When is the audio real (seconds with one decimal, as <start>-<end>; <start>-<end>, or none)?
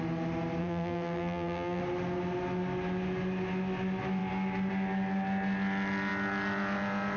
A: 0.0-0.6; 1.8-7.2